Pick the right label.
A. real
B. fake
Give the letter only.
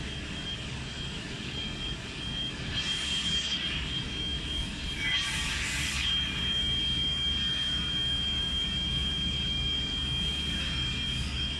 B